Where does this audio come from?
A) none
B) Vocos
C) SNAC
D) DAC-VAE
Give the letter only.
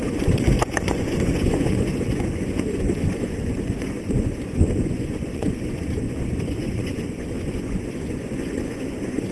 B